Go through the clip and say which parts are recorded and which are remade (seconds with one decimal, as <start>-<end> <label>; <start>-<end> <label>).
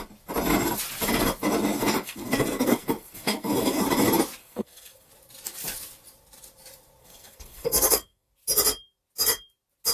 0.0-1.8 recorded; 1.8-3.8 remade; 3.8-4.4 recorded; 4.4-5.1 remade; 5.1-7.0 recorded; 7.0-8.3 remade; 8.3-9.9 recorded